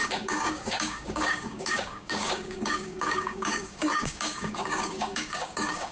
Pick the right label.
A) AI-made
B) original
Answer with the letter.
A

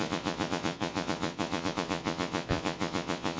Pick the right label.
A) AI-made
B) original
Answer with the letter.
A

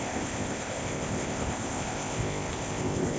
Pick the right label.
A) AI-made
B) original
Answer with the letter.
A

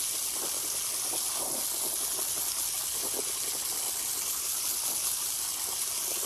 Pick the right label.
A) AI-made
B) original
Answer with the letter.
B